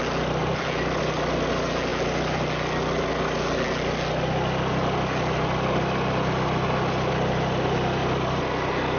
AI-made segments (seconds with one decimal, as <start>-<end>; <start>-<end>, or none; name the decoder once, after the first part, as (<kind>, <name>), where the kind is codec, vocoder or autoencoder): 0.4-1.0 (vocoder, BigVGAN v2)